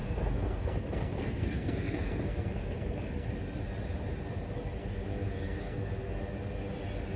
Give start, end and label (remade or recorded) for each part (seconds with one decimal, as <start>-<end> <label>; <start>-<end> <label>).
0.0-3.3 remade; 3.3-4.8 recorded; 4.8-6.1 remade; 6.1-7.2 recorded